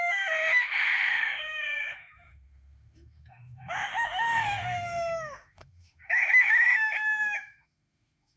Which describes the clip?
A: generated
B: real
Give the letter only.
A